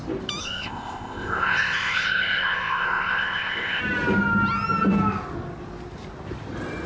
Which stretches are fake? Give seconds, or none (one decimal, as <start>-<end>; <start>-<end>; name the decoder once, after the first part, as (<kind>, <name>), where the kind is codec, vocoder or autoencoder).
0.4-3.8 (codec, ZipCodec)